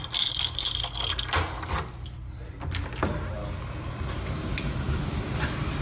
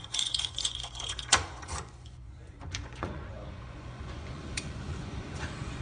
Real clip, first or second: first